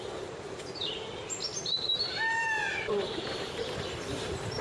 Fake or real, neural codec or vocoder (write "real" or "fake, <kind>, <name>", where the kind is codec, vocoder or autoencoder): fake, vocoder, BigVGAN v2